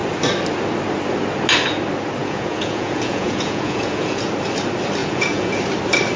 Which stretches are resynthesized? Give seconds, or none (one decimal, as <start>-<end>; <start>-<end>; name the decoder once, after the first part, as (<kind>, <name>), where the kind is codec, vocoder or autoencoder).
2.2-4.3 (vocoder, Vocos); 5.0-5.6